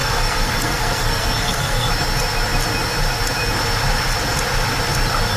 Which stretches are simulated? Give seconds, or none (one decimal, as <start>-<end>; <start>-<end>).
0.0-1.9